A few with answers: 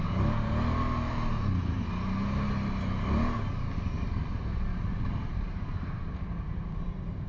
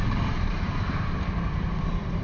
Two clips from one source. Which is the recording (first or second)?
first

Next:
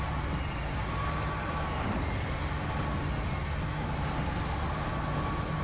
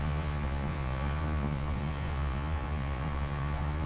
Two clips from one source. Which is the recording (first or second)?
first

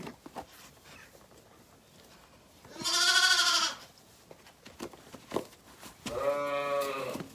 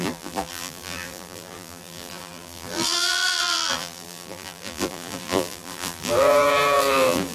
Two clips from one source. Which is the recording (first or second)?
first